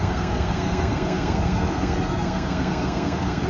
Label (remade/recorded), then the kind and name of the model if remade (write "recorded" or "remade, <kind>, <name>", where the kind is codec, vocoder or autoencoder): remade, codec, SNAC